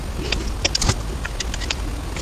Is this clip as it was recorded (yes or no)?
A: yes